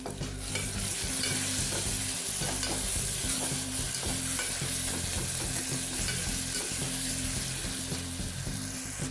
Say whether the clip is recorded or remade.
recorded